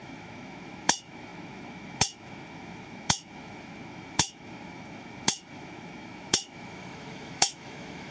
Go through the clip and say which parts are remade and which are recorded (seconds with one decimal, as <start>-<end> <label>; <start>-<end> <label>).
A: 0.0-8.1 remade